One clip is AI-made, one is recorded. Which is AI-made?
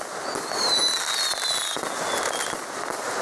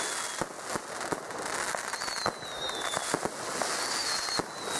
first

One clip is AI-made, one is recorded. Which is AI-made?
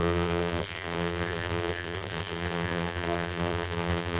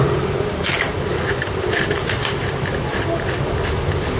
first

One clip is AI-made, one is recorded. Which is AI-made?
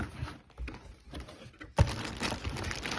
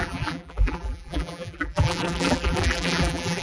second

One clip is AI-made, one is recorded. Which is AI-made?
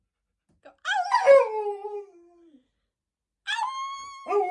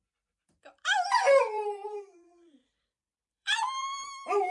second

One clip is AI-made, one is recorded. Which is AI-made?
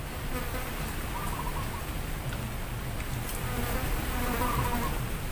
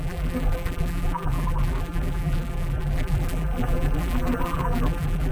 second